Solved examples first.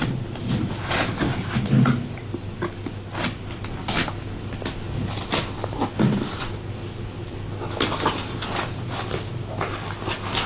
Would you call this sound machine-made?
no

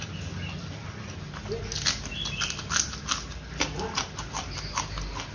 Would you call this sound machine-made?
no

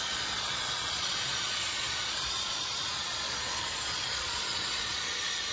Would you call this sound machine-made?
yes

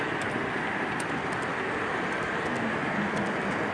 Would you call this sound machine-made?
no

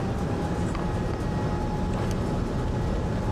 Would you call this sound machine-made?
no